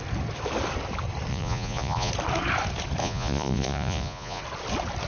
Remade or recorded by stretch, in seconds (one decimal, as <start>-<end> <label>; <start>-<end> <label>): 0.0-1.3 recorded; 1.3-2.1 remade; 2.1-3.0 recorded; 3.0-4.4 remade; 4.4-5.1 recorded